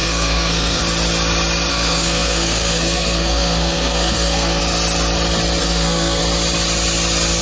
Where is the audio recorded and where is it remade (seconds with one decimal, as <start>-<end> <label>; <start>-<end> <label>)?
0.0-0.8 remade; 0.8-1.7 recorded; 1.7-4.6 remade; 4.6-5.6 recorded; 5.6-6.2 remade; 6.2-7.4 recorded